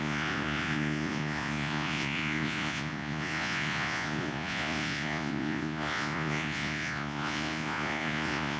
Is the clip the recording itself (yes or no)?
no